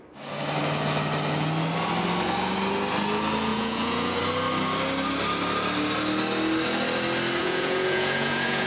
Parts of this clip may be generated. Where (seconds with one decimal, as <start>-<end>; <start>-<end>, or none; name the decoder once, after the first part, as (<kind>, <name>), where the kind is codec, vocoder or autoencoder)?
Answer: 3.5-4.2 (vocoder, Vocos); 7.4-8.7